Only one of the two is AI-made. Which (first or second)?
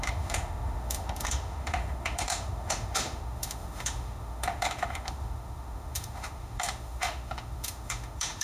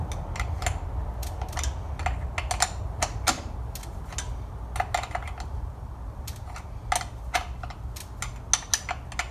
first